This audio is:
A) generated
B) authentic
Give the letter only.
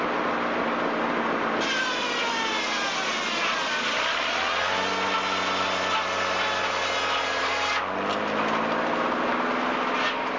B